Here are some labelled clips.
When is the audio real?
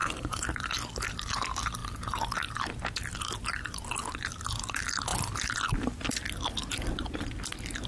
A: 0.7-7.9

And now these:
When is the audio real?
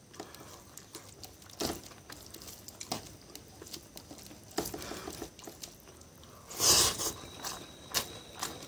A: 0.0-8.7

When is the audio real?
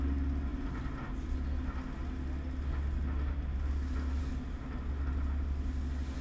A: 0.0-6.2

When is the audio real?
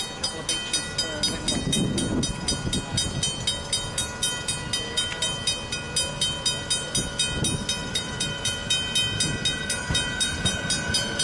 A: 0.0-7.8; 8.4-11.2